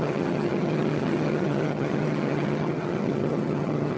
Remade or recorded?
remade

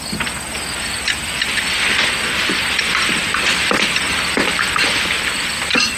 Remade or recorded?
recorded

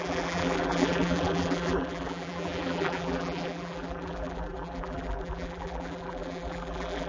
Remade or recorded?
remade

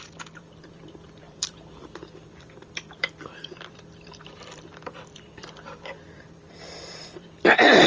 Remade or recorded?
remade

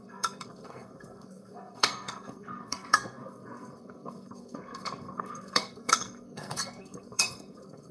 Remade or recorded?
remade